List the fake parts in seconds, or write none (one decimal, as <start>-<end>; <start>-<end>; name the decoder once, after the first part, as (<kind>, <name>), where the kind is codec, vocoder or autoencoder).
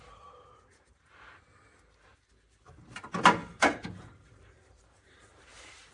3.4-5.4 (vocoder, BigVGAN v2)